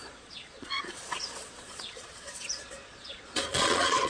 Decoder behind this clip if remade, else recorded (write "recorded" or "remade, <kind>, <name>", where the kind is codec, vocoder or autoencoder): remade, vocoder, Vocos